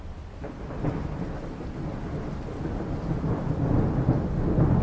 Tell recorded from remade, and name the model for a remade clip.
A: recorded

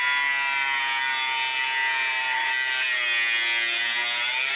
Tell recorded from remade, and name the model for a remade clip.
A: recorded